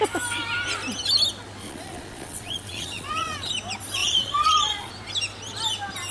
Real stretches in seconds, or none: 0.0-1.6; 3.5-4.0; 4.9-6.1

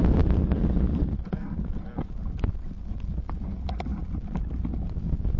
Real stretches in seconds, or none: 0.0-3.9; 4.6-5.4